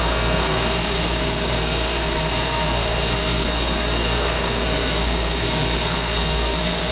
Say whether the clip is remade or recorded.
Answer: remade